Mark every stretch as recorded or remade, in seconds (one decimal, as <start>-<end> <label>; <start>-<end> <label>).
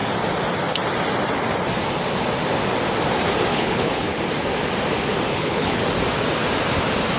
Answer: 0.0-3.5 recorded; 3.5-4.2 remade; 4.2-5.3 recorded; 5.3-5.8 remade; 5.8-7.2 recorded